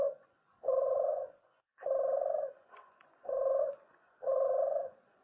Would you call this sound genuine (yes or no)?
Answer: no